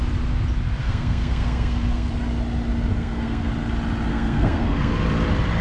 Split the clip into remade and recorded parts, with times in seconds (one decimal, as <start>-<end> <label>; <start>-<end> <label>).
0.0-0.8 recorded; 0.8-2.1 remade; 2.1-2.9 recorded; 2.9-3.5 remade; 3.5-4.1 recorded; 4.1-4.9 remade; 4.9-5.6 recorded